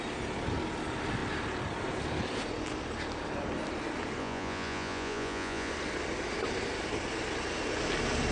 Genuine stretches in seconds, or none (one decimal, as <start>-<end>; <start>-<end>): 0.0-4.2; 5.7-8.3